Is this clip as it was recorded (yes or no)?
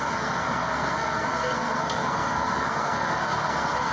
no